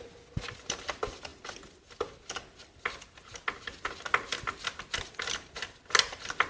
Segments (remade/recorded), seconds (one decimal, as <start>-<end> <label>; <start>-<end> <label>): 0.0-6.5 recorded